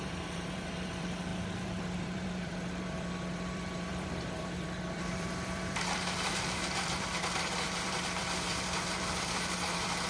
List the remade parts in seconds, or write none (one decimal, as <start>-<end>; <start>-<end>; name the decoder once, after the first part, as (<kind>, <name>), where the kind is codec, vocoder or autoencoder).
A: 0.0-10.1 (vocoder, BigVGAN v2)